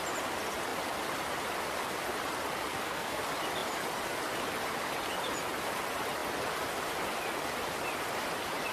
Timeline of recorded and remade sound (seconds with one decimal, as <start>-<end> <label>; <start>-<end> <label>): 0.0-2.7 recorded; 2.7-3.2 remade; 3.2-8.7 recorded